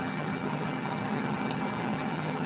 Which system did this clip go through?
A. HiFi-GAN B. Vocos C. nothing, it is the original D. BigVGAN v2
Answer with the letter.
A